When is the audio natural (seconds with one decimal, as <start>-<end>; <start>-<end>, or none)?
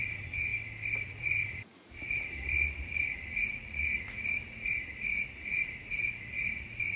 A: 0.5-1.0